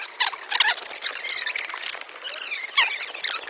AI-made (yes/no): no